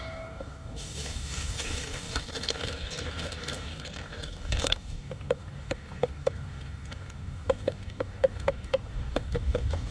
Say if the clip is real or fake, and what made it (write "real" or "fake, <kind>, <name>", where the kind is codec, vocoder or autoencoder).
fake, codec, DAC